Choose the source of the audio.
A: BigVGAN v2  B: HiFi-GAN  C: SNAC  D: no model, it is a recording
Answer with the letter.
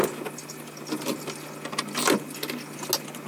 D